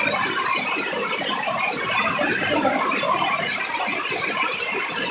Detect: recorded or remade remade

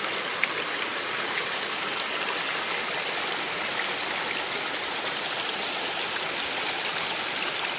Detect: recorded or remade recorded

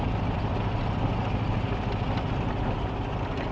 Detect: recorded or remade recorded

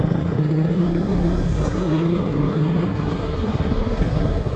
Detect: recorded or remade remade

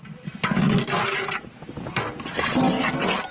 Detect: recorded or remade recorded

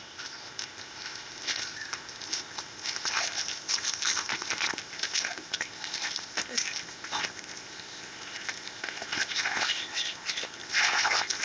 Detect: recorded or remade remade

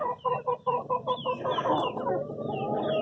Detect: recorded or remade recorded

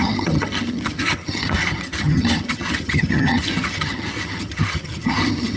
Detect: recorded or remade remade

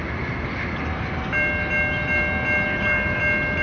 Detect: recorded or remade recorded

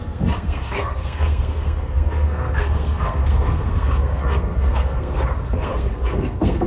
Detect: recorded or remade remade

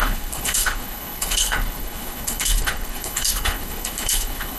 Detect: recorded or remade remade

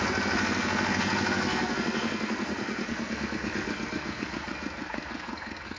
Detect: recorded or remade remade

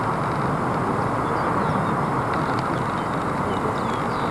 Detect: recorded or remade recorded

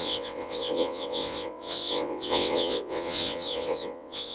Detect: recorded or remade remade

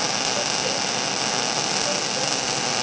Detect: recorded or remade recorded